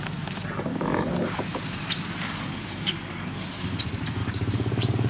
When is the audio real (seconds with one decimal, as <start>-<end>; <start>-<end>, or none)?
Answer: 0.0-0.7; 3.8-4.2